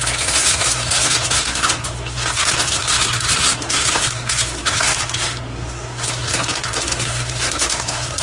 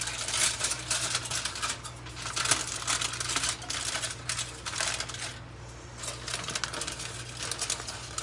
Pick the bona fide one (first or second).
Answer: second